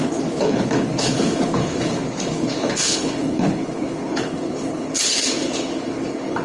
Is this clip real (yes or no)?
no